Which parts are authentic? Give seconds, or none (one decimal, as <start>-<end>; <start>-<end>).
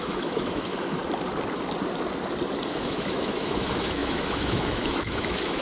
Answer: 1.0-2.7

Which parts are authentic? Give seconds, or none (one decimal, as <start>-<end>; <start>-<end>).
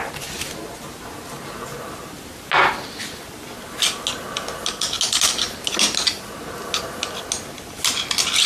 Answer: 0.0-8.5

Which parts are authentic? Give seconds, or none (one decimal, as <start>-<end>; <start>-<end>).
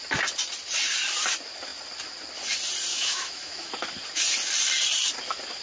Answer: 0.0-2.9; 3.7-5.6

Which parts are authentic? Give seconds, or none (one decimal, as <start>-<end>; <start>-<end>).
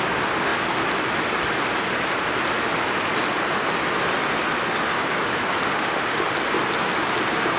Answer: 0.0-5.7; 6.3-7.6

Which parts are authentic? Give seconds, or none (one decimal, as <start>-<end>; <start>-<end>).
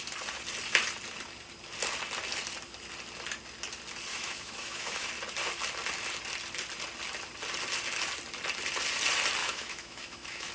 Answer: 0.0-4.1; 5.1-9.4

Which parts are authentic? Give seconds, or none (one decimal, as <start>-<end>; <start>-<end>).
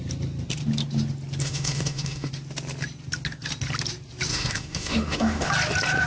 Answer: 0.0-1.4; 2.3-4.3; 5.5-6.1